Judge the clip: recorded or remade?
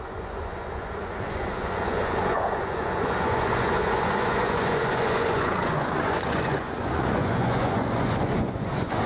remade